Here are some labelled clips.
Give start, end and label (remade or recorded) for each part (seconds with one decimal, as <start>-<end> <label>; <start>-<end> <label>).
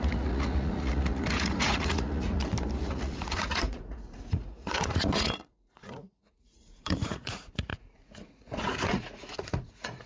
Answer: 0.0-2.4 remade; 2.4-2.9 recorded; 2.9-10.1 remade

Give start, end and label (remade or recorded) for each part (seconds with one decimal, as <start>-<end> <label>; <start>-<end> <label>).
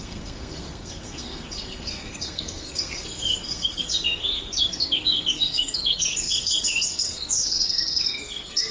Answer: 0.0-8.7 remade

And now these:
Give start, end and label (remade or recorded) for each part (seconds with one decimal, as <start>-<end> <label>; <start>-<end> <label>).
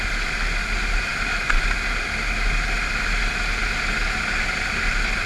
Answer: 0.0-5.3 recorded